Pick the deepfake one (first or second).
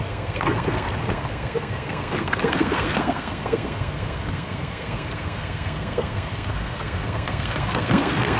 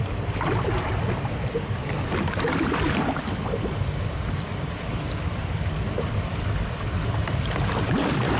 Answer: first